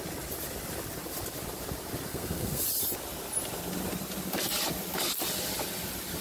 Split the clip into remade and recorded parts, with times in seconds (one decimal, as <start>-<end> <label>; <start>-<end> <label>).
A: 0.0-2.1 recorded; 2.1-2.6 remade; 2.6-6.2 recorded